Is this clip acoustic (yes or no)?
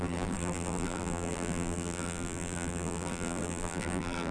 no